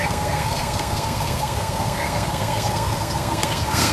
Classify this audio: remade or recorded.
remade